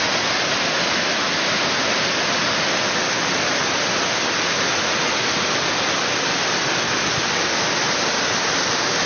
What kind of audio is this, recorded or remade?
recorded